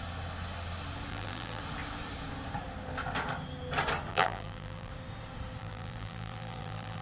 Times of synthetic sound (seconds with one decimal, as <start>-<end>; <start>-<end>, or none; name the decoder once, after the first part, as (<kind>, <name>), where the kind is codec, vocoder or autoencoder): 1.1-1.6 (vocoder, BigVGAN v2); 4.1-4.9; 5.6-7.0